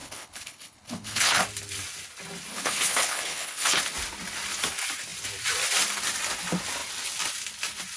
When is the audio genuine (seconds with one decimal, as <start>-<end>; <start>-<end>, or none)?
1.4-2.5; 3.8-8.0